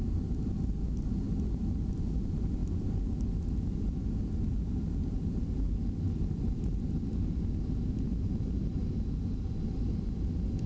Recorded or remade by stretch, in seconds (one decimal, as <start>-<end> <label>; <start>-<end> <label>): 0.0-10.7 recorded